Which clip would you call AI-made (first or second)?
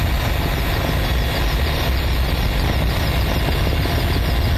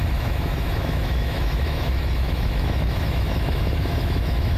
second